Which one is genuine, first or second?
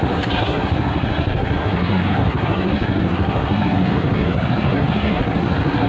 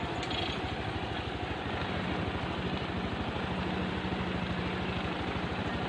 second